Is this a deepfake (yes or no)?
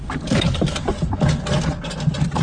no